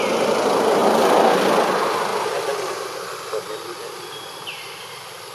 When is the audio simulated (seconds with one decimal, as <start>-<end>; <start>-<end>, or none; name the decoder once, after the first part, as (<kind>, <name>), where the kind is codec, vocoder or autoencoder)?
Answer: none